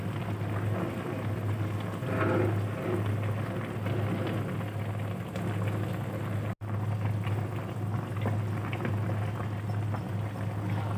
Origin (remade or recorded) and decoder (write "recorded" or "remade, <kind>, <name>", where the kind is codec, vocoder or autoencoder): recorded